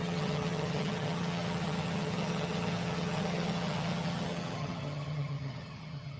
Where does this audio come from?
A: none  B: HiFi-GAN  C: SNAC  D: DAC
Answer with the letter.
B